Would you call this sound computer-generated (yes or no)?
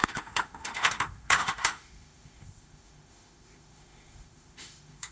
yes